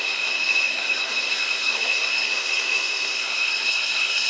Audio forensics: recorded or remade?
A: remade